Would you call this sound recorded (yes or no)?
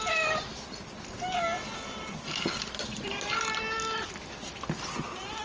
yes